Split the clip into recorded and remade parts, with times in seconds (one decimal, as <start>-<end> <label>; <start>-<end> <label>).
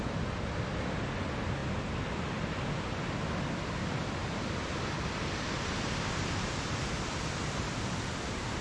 0.0-8.6 recorded